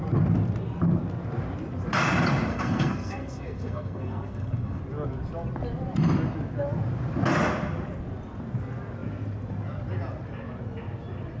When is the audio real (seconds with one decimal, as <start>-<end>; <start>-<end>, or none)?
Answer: 0.0-2.5; 4.8-11.4